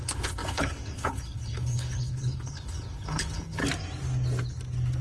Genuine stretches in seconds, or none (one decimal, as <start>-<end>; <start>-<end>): 3.6-5.0